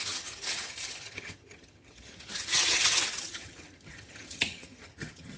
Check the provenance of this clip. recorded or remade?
remade